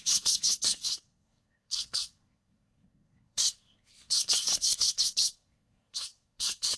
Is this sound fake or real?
fake